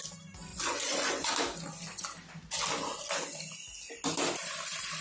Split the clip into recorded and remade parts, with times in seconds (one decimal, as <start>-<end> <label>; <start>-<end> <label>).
0.0-0.5 recorded; 0.5-1.3 remade; 1.3-5.0 recorded